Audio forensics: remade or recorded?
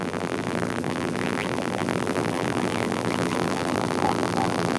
remade